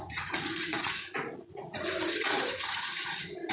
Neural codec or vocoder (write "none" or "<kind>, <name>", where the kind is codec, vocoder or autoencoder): vocoder, Vocos